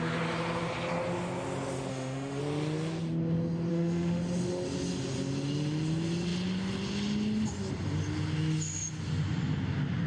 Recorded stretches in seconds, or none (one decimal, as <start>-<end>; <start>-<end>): 0.0-1.9; 2.4-3.7; 4.2-10.1